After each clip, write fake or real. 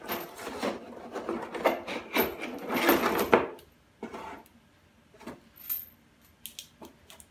real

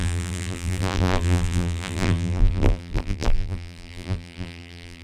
fake